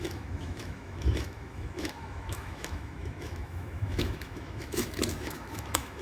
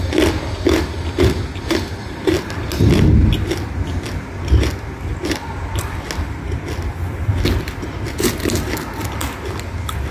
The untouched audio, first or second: second